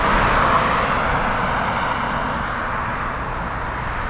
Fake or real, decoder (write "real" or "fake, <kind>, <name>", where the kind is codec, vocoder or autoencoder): real